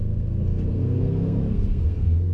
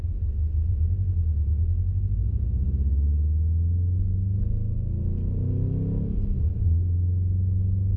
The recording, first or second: second